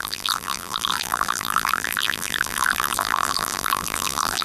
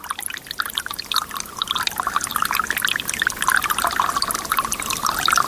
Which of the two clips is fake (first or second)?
first